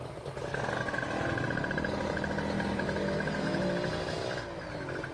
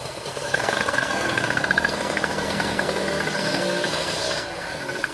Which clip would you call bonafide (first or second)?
first